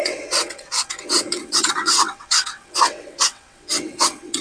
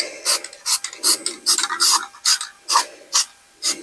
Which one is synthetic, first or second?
first